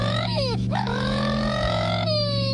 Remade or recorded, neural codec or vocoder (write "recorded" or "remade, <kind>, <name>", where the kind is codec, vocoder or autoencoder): remade, autoencoder, DAC-VAE